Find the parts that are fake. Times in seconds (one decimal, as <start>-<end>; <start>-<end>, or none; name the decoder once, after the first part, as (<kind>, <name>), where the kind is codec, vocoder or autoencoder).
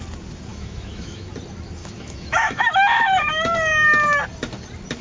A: 0.5-1.3 (autoencoder, DAC-VAE); 1.8-3.2